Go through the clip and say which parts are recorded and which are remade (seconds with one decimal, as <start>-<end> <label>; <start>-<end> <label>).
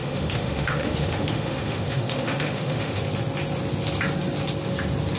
0.0-3.0 remade; 3.0-5.2 recorded